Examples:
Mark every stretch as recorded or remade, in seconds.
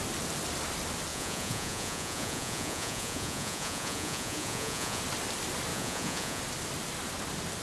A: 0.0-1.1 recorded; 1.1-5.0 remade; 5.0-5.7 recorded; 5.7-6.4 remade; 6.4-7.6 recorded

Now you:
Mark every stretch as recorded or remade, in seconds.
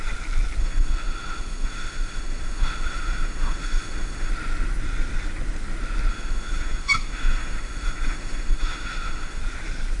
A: 0.0-0.6 recorded; 0.6-4.3 remade; 4.3-6.1 recorded; 6.1-9.4 remade; 9.4-10.0 recorded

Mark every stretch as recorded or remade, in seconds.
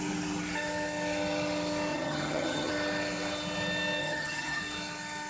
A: 0.0-1.9 recorded; 1.9-2.7 remade; 2.7-4.0 recorded; 4.0-4.6 remade; 4.6-5.3 recorded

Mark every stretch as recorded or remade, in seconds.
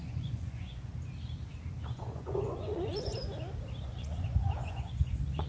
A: 0.0-0.9 remade; 0.9-1.9 recorded; 1.9-3.1 remade; 3.1-3.8 recorded; 3.8-5.5 remade